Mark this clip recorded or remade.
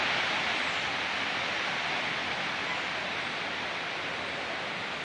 recorded